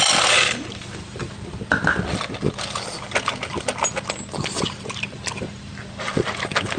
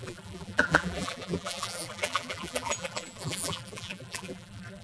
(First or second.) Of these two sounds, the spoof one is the second